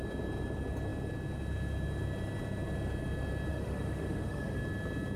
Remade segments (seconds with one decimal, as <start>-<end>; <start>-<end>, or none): 3.5-4.6

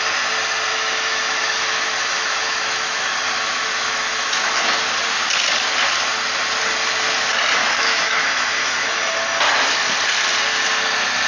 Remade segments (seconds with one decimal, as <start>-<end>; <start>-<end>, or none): 0.7-4.9; 7.6-9.1

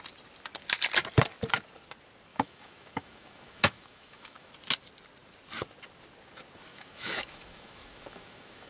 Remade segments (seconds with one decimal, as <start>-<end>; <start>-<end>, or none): 2.3-4.5; 6.7-8.7